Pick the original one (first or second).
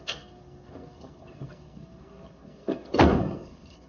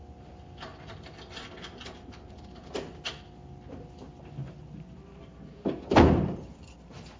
second